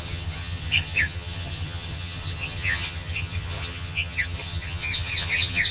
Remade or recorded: remade